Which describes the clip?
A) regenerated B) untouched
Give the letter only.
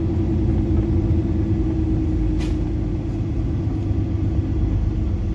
B